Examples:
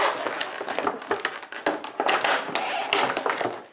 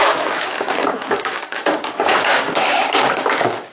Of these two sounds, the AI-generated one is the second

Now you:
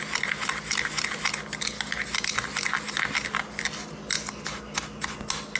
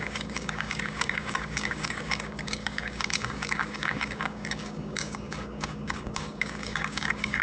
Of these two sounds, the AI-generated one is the second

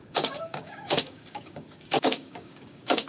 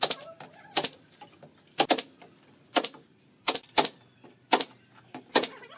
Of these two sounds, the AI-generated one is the first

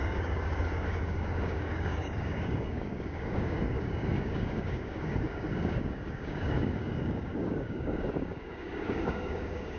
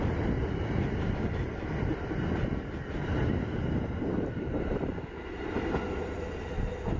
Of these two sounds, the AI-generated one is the first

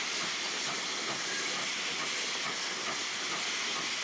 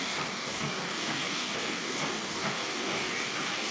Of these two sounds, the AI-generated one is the second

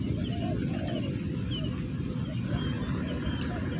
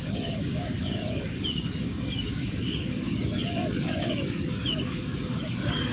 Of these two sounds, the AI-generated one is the second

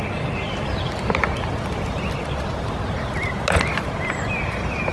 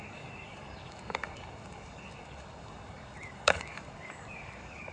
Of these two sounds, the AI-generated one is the second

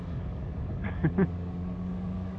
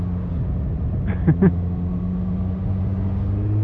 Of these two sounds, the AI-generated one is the first